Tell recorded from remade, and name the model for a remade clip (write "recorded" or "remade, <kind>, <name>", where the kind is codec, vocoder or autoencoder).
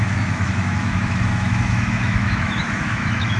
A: remade, autoencoder, DAC-VAE